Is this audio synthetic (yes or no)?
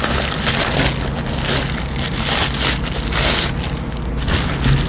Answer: no